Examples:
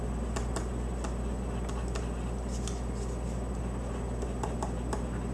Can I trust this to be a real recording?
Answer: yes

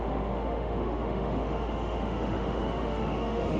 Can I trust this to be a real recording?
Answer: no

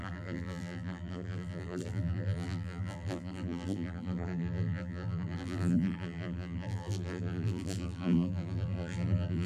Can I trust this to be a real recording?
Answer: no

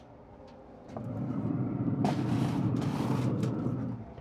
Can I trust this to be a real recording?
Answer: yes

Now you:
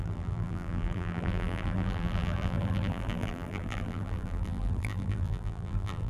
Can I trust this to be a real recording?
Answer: no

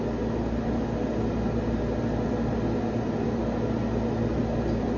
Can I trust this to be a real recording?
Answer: yes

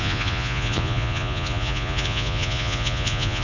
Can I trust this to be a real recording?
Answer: no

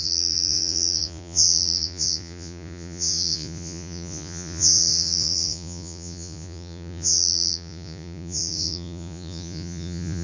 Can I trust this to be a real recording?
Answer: no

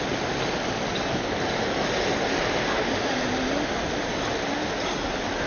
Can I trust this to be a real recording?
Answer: yes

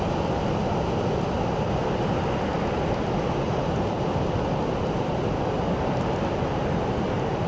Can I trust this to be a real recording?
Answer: yes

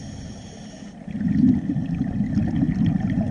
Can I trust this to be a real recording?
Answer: yes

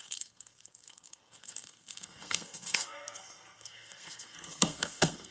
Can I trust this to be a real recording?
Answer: no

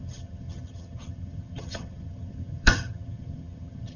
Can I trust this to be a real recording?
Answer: no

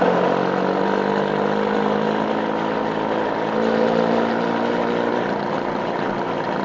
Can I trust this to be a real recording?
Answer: yes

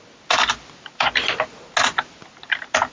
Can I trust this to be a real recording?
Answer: yes